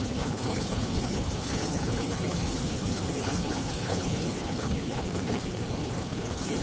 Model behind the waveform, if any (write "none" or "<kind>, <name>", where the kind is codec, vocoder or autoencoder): codec, HILCodec